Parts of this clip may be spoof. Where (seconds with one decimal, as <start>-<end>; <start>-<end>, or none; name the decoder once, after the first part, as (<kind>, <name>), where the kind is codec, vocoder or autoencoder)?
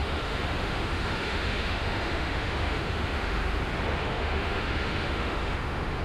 0.0-3.6 (autoencoder, DAC-VAE); 4.0-6.0